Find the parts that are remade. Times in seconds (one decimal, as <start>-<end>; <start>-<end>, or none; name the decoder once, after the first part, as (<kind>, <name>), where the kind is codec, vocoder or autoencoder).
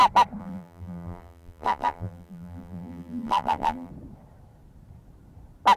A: 0.4-3.9 (vocoder, BigVGAN v2)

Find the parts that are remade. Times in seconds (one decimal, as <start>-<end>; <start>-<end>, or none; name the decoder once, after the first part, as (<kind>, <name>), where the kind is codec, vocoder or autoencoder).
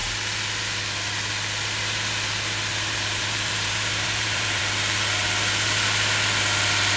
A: 2.7-4.6 (vocoder, BigVGAN v2)